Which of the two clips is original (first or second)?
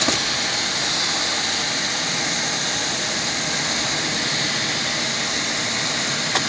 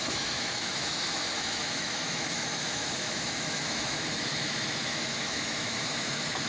first